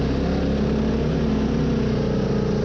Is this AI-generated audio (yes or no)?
no